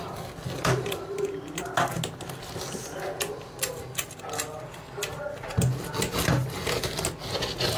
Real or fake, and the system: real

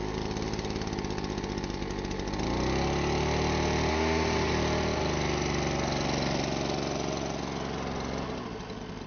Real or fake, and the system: real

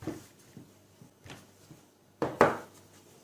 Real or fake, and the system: real